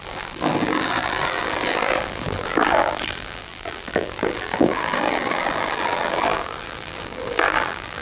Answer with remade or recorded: remade